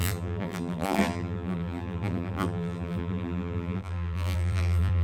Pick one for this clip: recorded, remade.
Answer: remade